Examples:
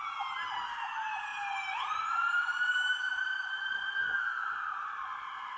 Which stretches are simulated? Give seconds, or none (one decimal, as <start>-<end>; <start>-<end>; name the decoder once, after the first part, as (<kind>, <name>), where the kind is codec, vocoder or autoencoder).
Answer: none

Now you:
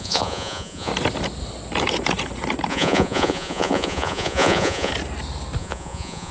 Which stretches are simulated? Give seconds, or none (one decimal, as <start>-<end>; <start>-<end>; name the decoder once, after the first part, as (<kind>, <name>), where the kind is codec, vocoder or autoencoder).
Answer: 0.0-0.9 (vocoder, Vocos); 2.7-4.9; 5.6-6.3

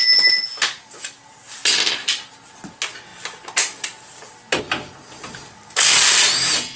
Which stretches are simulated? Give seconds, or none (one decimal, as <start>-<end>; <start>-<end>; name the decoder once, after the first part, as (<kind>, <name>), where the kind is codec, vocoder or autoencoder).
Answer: none

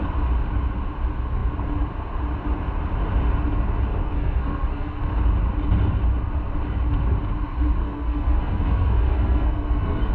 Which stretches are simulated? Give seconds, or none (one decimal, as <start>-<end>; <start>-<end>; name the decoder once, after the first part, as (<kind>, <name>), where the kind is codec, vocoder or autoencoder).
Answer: 4.0-5.0 (codec, SNAC); 7.8-10.1